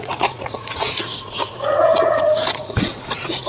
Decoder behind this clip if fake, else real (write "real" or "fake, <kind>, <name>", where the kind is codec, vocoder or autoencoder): fake, vocoder, Vocos